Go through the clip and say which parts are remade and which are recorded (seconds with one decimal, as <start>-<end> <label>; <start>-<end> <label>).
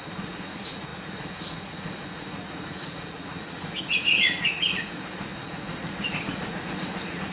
0.0-7.3 remade